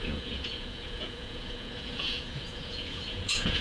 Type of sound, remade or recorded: remade